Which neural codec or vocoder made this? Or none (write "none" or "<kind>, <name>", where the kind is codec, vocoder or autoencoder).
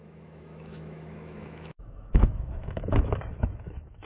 autoencoder, DAC-VAE